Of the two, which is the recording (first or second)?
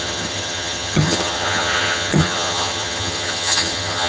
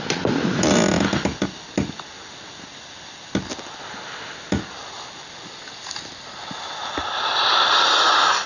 second